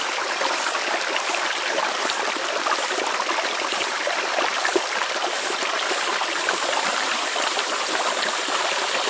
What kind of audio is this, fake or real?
fake